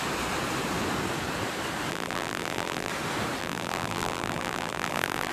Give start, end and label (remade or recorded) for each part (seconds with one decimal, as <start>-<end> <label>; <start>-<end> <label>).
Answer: 0.0-1.9 recorded; 1.9-2.9 remade; 2.9-3.4 recorded; 3.4-5.3 remade